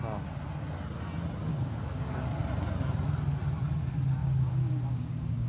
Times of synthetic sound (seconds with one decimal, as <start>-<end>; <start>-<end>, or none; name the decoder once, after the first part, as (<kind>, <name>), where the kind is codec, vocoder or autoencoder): 1.5-2.0 (codec, DAC); 4.2-5.5